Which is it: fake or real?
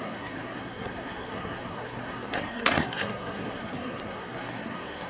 fake